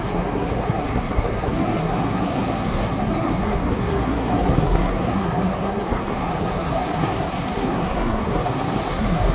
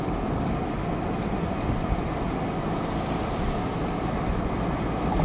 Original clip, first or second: second